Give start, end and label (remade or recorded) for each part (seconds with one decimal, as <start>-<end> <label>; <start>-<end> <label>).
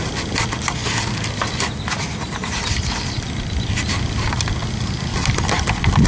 0.0-6.1 recorded